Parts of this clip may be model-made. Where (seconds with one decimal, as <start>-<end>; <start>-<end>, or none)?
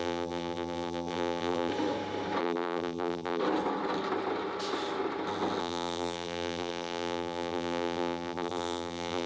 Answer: 0.0-1.7; 2.4-3.4; 5.6-9.3